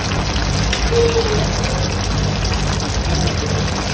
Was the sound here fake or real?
real